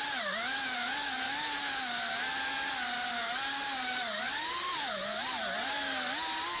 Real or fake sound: real